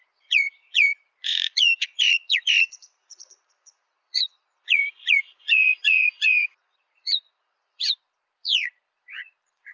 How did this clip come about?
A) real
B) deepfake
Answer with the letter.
B